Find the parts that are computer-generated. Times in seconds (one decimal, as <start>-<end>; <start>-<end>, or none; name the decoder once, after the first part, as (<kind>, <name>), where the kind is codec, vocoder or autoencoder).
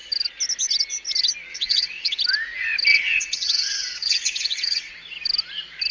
1.5-2.2 (vocoder, WaveNeXt); 2.9-4.9